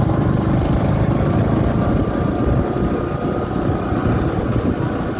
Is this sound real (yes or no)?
yes